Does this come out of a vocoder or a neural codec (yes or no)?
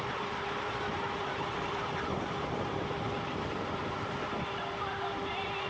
yes